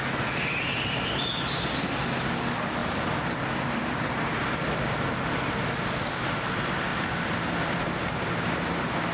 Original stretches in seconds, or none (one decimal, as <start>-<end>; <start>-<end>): 0.0-2.8; 5.0-6.9; 7.8-9.1